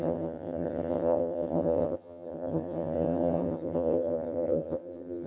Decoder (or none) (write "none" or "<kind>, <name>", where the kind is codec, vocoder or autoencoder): vocoder, HiFi-GAN